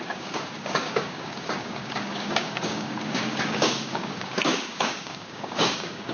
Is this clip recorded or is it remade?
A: remade